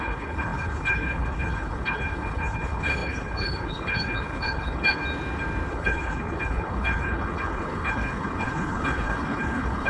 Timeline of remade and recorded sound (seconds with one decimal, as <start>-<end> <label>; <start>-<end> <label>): 0.0-5.0 remade; 5.0-5.7 recorded; 5.7-9.9 remade